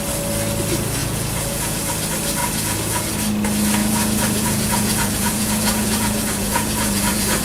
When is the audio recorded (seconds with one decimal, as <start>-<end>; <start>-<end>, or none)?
0.0-1.0; 1.9-2.4; 3.1-3.8